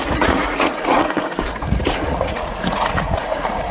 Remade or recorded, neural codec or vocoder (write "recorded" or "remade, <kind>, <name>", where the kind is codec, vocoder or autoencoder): remade, vocoder, Vocos